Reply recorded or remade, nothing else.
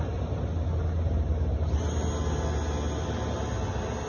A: recorded